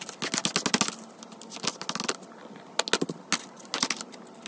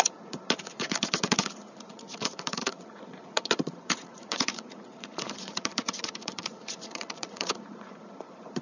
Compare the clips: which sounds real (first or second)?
first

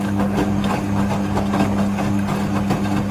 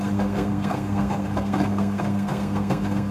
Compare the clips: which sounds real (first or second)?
first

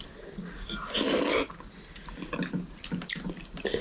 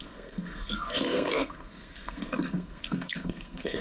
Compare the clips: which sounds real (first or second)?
first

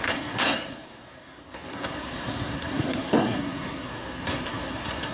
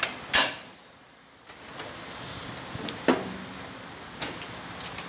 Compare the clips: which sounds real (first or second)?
second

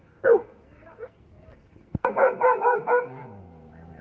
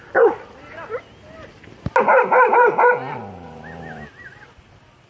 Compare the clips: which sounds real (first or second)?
second